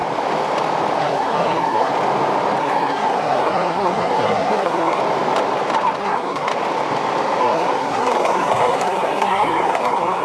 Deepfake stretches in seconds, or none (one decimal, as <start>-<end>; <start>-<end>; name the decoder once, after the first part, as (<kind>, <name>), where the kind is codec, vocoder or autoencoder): 1.0-1.9 (codec, SNAC); 2.6-5.0; 6.0-6.5; 7.4-10.2